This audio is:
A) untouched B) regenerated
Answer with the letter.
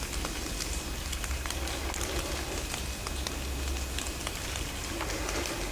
A